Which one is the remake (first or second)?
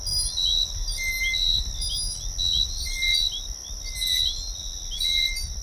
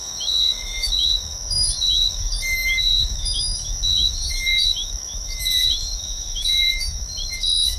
second